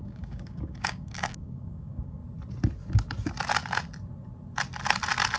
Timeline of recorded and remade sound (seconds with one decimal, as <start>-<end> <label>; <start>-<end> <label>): 0.0-2.2 remade; 2.2-5.4 recorded